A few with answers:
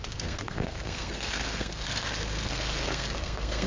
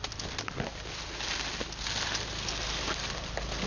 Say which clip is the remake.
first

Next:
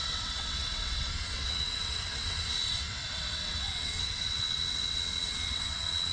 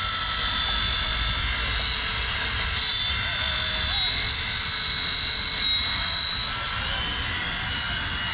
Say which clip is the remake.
first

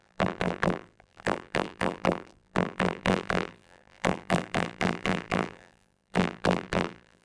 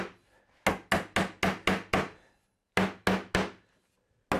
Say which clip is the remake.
first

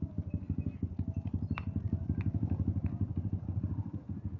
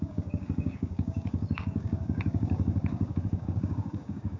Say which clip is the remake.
second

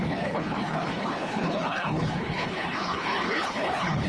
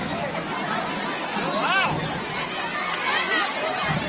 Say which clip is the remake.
first